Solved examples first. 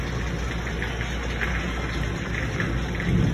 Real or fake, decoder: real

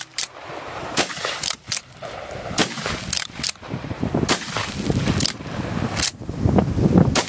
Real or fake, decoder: fake, vocoder, BigVGAN v2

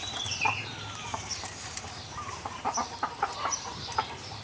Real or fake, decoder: fake, vocoder, BigVGAN v2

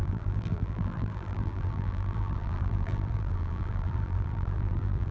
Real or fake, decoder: fake, vocoder, BigVGAN v2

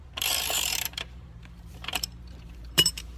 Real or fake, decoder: fake, vocoder, BigVGAN v2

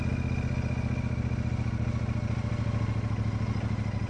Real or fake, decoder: real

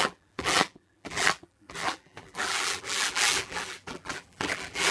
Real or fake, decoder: fake, vocoder, BigVGAN v2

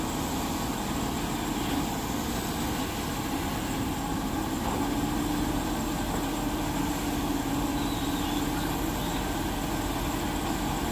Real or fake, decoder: real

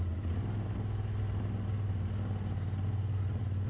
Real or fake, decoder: real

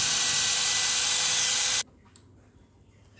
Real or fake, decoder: real